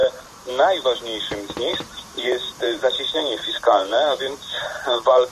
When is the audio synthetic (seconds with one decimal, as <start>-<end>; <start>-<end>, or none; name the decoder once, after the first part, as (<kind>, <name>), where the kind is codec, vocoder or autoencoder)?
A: 0.0-0.5 (vocoder, BigVGAN v2); 1.7-5.3